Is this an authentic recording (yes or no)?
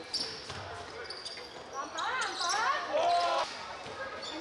yes